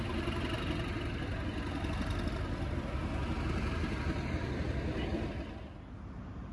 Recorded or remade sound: recorded